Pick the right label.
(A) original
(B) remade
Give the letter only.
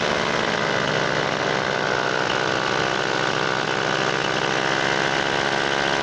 A